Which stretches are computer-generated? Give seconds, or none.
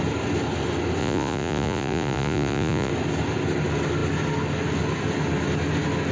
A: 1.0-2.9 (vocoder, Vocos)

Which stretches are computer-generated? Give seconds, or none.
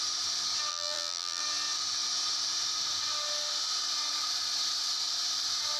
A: 0.7-1.4 (vocoder, BigVGAN v2)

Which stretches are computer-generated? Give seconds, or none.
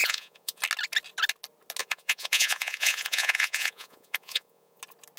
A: 0.0-0.6 (vocoder, Vocos); 1.8-4.8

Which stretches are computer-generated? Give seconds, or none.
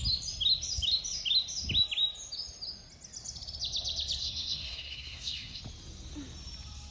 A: 4.2-5.6 (codec, SNAC)